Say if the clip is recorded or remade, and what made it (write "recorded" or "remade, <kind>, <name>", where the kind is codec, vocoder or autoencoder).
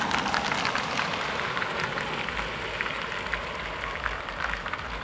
recorded